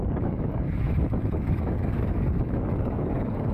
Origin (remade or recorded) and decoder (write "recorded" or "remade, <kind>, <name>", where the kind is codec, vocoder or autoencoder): remade, codec, DAC